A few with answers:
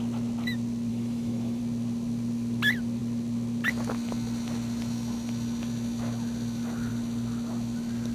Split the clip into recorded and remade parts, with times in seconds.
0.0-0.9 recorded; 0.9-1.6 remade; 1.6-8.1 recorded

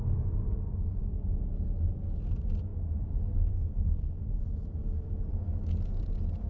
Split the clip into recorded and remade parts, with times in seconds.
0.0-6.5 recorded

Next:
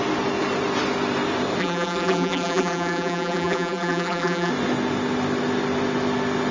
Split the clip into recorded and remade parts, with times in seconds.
0.0-1.6 recorded; 1.6-4.5 remade; 4.5-6.5 recorded